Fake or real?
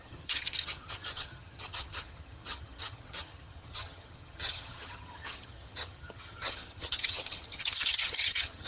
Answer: fake